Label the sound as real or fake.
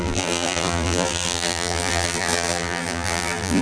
fake